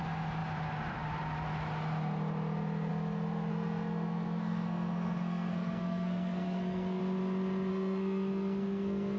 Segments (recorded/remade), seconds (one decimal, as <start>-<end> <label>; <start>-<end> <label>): 0.0-3.5 recorded; 3.5-7.0 remade; 7.0-7.7 recorded; 7.7-9.2 remade